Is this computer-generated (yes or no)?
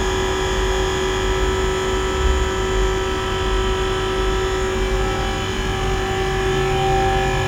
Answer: no